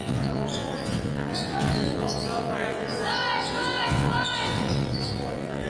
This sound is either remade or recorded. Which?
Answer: remade